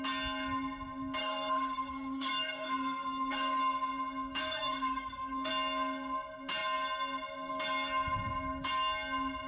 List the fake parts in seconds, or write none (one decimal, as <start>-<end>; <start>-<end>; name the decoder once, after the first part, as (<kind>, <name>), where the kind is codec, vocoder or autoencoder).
1.2-3.6 (codec, SNAC); 4.4-5.5